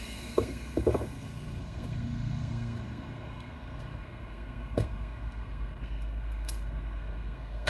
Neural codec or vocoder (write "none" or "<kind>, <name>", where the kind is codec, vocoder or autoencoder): codec, SNAC